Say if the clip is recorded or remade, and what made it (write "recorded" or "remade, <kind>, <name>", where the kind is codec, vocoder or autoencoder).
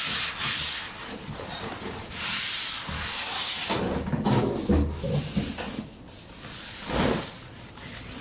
recorded